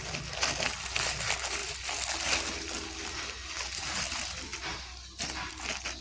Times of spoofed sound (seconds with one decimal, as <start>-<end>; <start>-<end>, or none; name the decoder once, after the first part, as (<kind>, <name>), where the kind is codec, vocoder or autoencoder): none